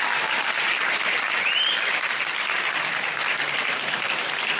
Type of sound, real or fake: real